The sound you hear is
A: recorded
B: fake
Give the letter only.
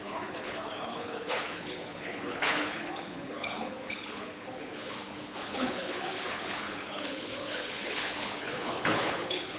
B